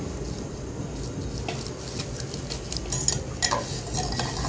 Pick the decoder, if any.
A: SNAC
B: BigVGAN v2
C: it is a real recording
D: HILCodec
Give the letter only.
C